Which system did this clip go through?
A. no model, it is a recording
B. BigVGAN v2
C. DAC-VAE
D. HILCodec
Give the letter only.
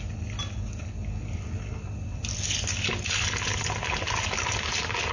A